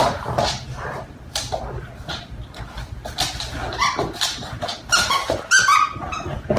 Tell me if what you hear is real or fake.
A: fake